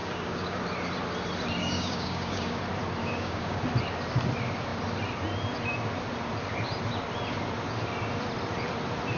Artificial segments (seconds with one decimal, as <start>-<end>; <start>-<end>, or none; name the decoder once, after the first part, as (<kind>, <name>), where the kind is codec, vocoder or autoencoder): 0.0-0.6 (codec, DAC); 1.6-2.6; 3.0-3.6